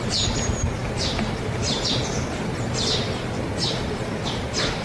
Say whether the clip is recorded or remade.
recorded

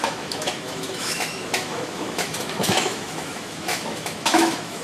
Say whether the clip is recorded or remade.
remade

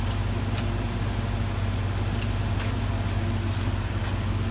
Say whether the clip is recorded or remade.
recorded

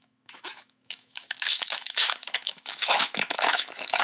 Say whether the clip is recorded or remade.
remade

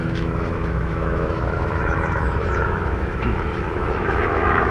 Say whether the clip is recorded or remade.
remade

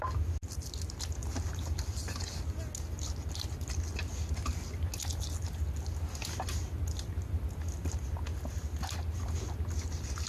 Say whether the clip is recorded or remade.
recorded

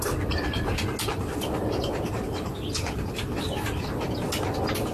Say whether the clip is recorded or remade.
recorded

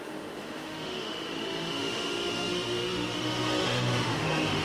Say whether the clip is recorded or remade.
remade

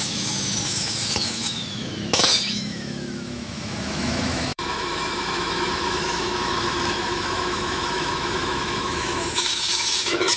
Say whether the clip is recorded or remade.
remade